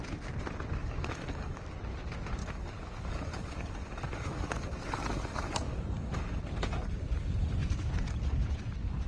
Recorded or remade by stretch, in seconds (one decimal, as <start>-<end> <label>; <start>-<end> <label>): 0.0-0.8 recorded; 0.8-1.6 remade; 1.6-2.4 recorded; 2.4-6.4 remade; 6.4-9.1 recorded